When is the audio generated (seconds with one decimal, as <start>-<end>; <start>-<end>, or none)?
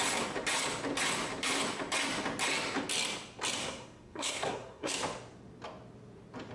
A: 3.6-4.9